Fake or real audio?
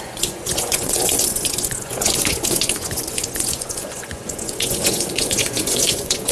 fake